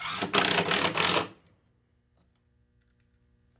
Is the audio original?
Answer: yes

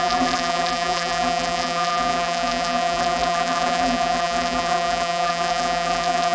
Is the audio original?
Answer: no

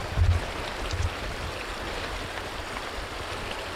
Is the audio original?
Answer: yes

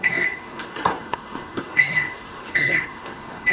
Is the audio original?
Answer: no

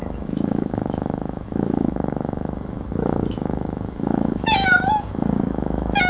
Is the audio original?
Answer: no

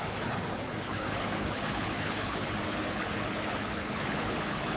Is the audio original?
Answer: no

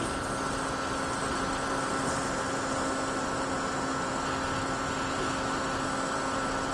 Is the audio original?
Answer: yes